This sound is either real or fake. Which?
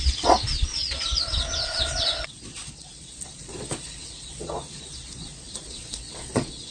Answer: fake